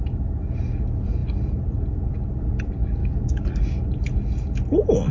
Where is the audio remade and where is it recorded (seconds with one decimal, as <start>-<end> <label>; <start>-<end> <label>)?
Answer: 0.0-3.0 recorded; 3.0-3.6 remade; 3.6-5.1 recorded